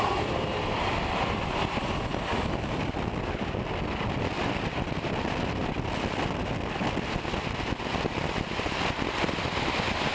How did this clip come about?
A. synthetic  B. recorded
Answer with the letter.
B